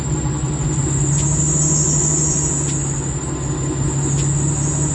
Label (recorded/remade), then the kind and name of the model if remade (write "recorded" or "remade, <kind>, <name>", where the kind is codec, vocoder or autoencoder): recorded